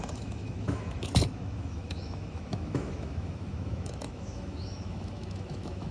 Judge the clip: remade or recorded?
remade